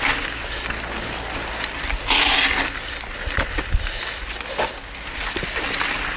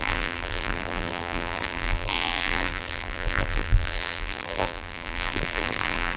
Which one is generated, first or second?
second